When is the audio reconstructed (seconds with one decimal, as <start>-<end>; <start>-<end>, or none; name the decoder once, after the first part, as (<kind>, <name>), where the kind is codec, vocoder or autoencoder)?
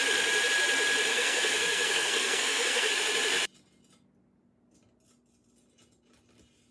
1.1-2.9 (codec, SNAC)